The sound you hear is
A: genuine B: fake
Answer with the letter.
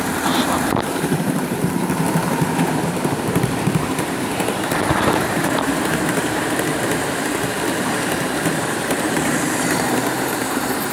B